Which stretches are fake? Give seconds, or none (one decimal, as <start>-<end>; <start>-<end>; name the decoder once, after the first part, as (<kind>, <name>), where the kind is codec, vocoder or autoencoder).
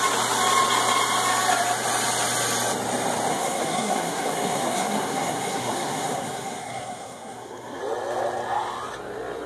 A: 3.3-7.8 (codec, SNAC)